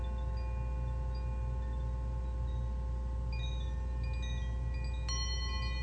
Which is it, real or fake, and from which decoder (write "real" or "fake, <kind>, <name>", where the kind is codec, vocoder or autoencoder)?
real